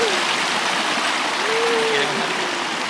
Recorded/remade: recorded